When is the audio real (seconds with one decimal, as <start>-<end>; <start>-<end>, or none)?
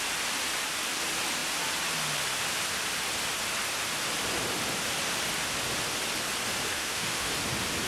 0.0-6.7; 7.3-7.9